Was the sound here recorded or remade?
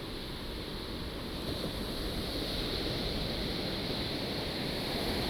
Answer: recorded